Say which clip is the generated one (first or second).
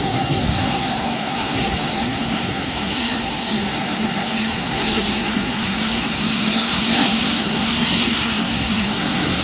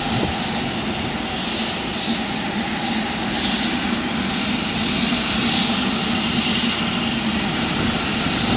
first